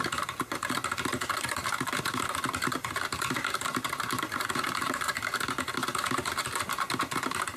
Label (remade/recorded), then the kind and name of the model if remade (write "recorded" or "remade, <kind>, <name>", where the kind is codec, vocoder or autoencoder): remade, vocoder, BigVGAN v2